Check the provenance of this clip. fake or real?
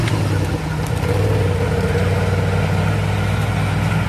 real